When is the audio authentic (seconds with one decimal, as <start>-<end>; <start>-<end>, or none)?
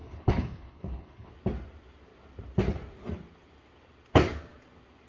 1.3-5.1